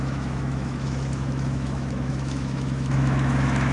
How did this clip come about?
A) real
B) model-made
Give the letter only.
B